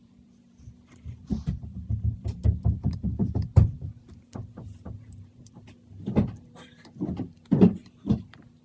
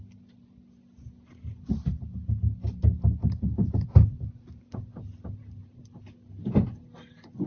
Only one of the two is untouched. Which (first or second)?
second